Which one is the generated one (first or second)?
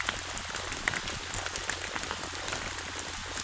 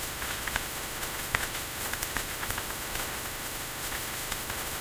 second